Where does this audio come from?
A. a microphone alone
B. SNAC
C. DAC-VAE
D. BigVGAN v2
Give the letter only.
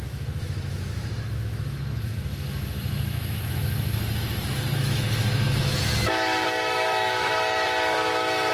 C